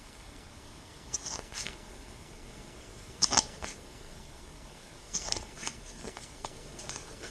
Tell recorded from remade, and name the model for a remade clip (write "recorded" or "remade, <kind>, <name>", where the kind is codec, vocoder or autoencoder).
remade, codec, SNAC